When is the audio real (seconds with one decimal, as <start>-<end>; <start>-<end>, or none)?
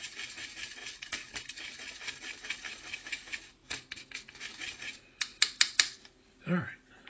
0.0-7.1